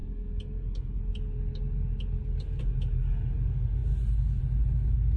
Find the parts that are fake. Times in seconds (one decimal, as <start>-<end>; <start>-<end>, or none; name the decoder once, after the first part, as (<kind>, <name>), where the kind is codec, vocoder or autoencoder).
none